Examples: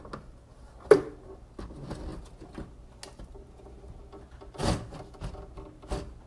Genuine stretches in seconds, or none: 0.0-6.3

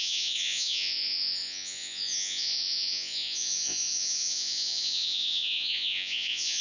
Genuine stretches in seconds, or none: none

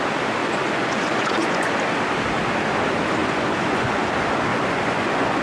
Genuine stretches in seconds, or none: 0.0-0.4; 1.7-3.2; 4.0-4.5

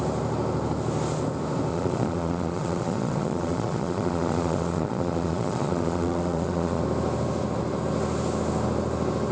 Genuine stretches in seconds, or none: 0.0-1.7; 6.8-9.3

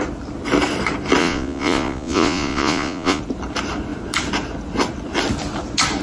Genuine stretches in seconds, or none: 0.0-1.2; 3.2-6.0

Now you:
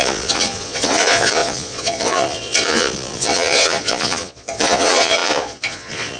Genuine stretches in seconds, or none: none

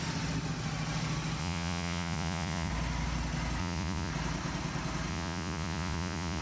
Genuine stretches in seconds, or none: 0.0-1.4; 2.7-3.6; 4.1-5.1